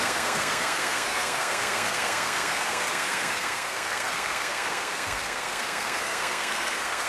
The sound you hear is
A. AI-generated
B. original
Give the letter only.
A